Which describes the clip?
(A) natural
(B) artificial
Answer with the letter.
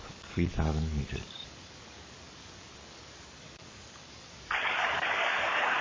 B